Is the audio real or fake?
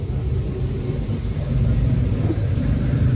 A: real